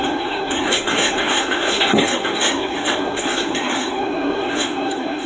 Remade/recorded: remade